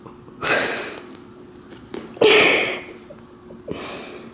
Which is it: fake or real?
real